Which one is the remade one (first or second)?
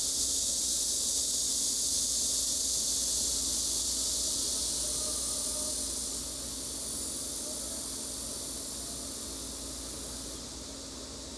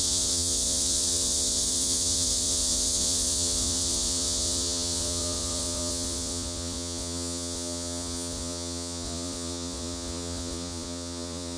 second